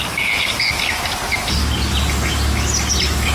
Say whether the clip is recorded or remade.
recorded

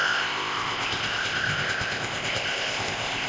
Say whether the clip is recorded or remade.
remade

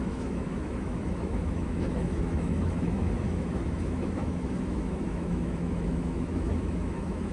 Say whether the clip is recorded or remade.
remade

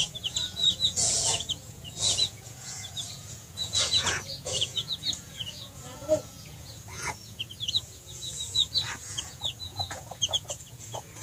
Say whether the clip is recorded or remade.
remade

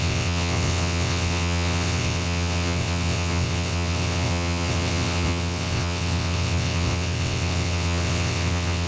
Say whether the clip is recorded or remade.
remade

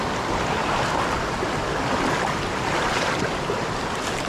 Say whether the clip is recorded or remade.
recorded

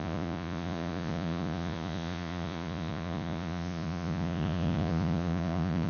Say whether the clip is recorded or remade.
remade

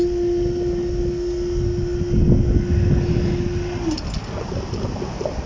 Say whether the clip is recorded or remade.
recorded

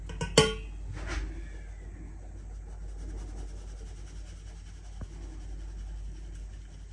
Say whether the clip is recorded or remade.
recorded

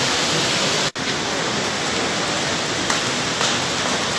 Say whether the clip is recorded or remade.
recorded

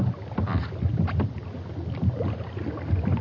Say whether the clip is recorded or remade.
recorded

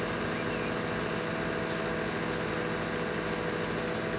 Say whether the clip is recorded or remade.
recorded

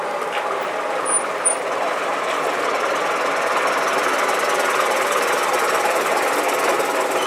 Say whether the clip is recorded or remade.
recorded